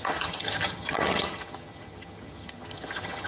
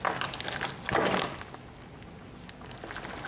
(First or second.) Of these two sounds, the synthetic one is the first